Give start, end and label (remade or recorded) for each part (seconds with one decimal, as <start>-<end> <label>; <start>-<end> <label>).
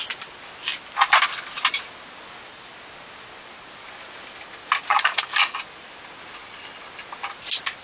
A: 0.0-4.9 recorded; 4.9-5.6 remade; 5.6-7.8 recorded